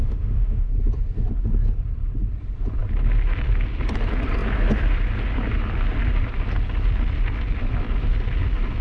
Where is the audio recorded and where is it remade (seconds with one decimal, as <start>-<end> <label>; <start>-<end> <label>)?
0.0-0.7 remade; 0.7-8.8 recorded